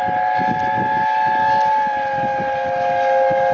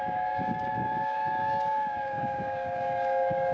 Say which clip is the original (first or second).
first